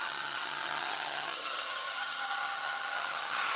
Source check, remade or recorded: remade